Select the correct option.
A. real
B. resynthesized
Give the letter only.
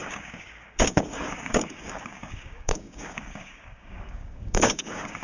B